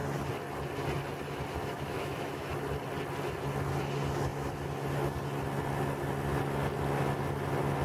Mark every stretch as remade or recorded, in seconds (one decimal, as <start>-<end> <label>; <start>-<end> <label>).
0.0-1.6 recorded; 1.6-2.5 remade; 2.5-7.8 recorded